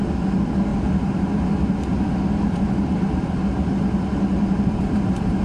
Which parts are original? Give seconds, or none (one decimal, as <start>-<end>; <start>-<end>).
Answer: 0.0-5.4